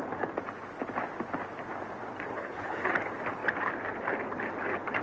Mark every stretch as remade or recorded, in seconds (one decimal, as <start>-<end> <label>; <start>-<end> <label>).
0.0-2.3 recorded; 2.3-2.9 remade; 2.9-5.0 recorded

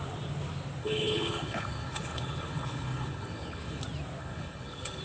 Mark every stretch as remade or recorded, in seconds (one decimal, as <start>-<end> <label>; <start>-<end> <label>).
0.0-0.8 recorded; 0.8-3.8 remade; 3.8-4.2 recorded; 4.2-5.0 remade

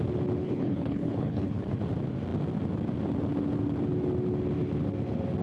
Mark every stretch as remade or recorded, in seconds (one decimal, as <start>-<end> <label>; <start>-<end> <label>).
0.0-0.4 recorded; 0.4-1.7 remade; 1.7-5.4 recorded

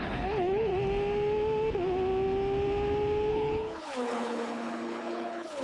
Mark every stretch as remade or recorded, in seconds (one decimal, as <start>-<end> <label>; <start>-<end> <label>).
0.0-0.7 remade; 0.7-3.3 recorded; 3.3-5.6 remade

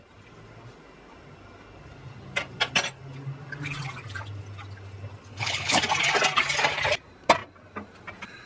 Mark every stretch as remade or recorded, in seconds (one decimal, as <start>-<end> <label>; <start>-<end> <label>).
0.0-5.3 recorded; 5.3-5.8 remade; 5.8-8.5 recorded

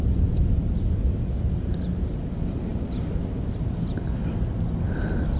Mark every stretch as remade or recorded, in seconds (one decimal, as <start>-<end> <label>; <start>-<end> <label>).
0.0-5.4 recorded

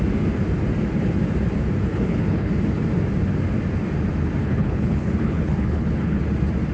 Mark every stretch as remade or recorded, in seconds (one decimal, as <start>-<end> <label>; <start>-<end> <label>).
0.0-1.9 recorded; 1.9-2.5 remade; 2.5-4.4 recorded; 4.4-6.2 remade; 6.2-6.7 recorded